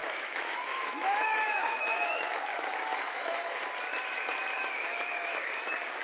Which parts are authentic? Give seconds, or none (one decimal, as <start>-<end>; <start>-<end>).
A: 3.6-4.6; 5.5-6.0

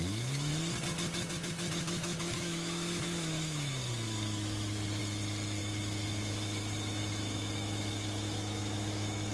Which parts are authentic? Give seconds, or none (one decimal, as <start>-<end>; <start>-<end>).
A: 0.5-1.8; 5.0-5.6